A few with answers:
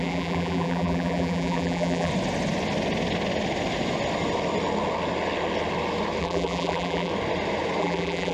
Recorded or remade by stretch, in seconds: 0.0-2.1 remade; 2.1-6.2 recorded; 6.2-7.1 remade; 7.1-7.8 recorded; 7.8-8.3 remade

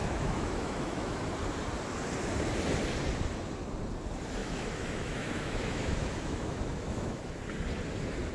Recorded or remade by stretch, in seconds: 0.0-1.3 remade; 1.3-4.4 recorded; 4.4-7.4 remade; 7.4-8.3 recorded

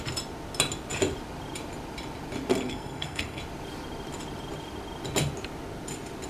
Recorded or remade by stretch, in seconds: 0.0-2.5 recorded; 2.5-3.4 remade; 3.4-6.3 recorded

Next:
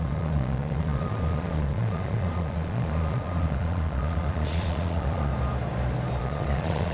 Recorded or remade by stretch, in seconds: 0.0-5.3 remade; 5.3-6.2 recorded; 6.2-6.9 remade

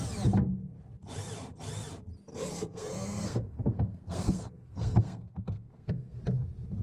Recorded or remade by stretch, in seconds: 0.0-2.3 recorded; 2.3-6.2 remade; 6.2-6.8 recorded

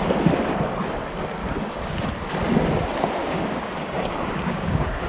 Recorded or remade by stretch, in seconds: 0.0-1.4 recorded; 1.4-2.0 remade; 2.0-3.2 recorded; 3.2-5.1 remade